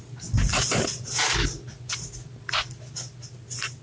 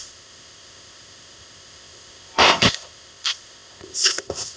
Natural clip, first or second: first